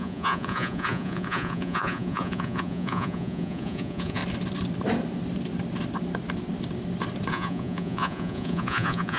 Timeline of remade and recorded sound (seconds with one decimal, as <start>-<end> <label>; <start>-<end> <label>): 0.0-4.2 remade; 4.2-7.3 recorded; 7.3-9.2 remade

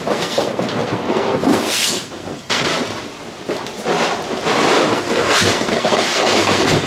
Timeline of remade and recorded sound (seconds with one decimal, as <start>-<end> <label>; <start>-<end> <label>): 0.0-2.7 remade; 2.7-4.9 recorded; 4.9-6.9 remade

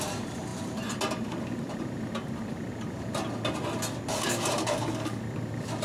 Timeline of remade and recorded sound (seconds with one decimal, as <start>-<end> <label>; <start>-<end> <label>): 0.0-4.1 recorded; 4.1-5.2 remade; 5.2-5.8 recorded

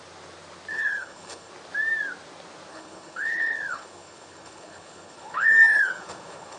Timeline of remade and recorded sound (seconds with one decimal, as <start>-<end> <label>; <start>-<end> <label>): 0.0-0.7 recorded; 0.7-1.5 remade; 1.5-2.7 recorded; 2.7-6.6 remade

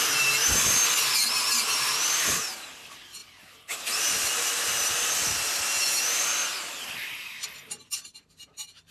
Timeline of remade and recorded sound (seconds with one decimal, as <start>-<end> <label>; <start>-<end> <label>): 0.0-8.9 recorded

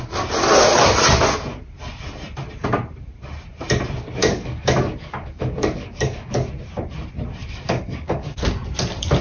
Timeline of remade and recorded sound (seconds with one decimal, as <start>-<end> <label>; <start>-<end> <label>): 0.0-4.2 recorded; 4.2-6.5 remade; 6.5-7.4 recorded; 7.4-8.5 remade; 8.5-9.2 recorded